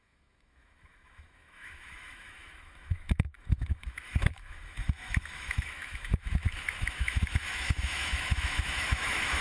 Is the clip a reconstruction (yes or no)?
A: yes